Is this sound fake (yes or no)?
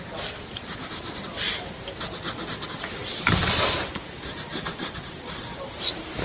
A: no